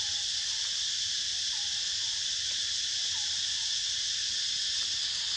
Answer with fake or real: real